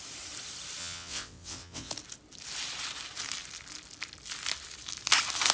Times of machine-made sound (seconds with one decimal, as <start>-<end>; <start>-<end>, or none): 0.8-1.9